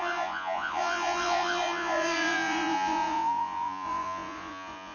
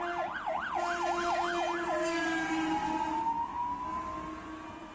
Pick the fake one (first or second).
first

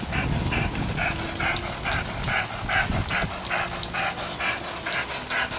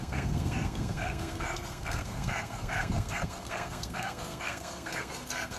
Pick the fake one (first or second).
second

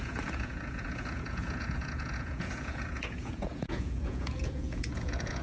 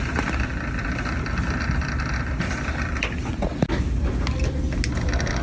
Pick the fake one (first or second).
first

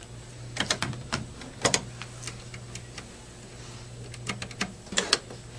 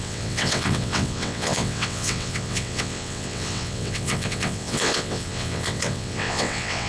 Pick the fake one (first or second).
second